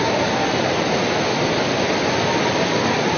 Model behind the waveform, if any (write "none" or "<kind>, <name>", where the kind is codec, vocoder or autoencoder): none